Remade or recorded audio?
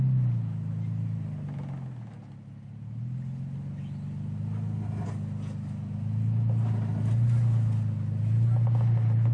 recorded